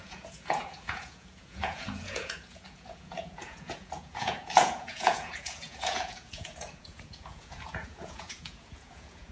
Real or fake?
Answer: fake